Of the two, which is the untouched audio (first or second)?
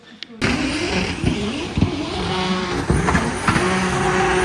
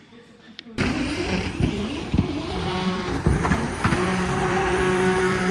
first